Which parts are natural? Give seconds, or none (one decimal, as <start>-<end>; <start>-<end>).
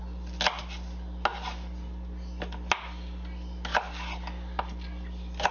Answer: 0.0-5.5